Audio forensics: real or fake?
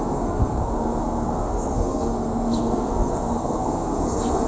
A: fake